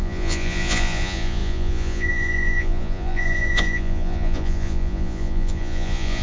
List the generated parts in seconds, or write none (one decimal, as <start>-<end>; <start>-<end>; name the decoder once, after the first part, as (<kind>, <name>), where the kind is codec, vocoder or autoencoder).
0.0-6.2 (vocoder, Vocos)